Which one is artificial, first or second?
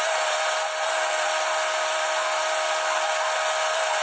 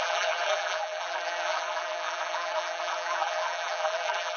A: second